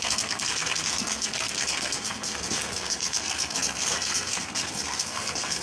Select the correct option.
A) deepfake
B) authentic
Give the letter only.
A